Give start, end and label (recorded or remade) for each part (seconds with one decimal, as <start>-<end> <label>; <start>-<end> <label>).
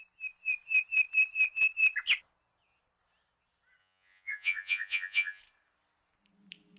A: 0.0-3.8 recorded; 3.8-5.4 remade; 5.4-6.8 recorded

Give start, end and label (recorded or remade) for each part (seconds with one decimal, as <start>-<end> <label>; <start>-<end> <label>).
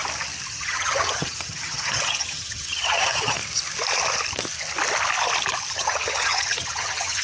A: 0.0-0.5 recorded; 0.5-3.4 remade; 3.4-5.7 recorded; 5.7-7.2 remade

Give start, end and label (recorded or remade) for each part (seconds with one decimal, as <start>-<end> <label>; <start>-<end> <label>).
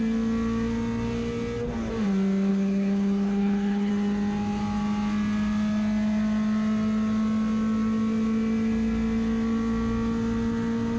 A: 0.0-2.5 recorded; 2.5-3.9 remade; 3.9-11.0 recorded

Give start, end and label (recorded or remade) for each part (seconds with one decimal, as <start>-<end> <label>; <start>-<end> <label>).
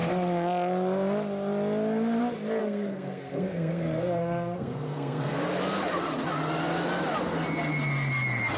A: 0.0-2.6 recorded; 2.6-5.4 remade; 5.4-8.6 recorded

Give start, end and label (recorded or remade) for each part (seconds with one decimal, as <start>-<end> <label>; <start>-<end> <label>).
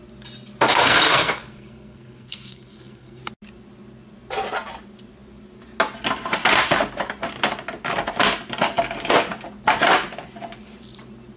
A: 0.0-0.7 recorded; 0.7-3.2 remade; 3.2-11.4 recorded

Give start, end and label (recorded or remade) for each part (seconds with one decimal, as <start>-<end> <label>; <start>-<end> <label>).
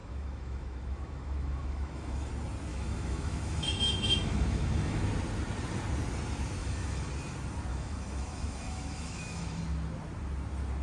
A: 0.0-2.3 remade; 2.3-2.7 recorded; 2.7-5.1 remade; 5.1-6.6 recorded; 6.6-7.1 remade; 7.1-7.7 recorded; 7.7-9.6 remade; 9.6-10.8 recorded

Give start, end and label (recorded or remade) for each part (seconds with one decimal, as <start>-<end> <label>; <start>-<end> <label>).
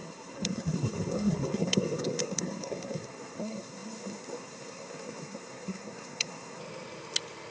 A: 0.0-6.6 remade; 6.6-7.5 recorded